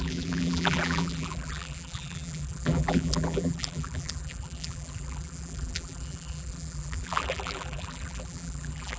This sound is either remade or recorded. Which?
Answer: remade